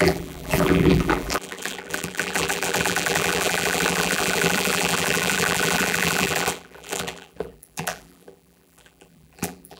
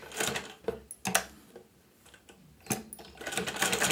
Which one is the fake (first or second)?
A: first